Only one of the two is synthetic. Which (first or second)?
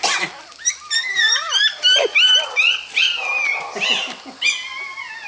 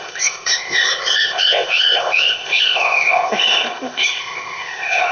second